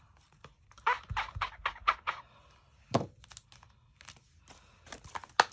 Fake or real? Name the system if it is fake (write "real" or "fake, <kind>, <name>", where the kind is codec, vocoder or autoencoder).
real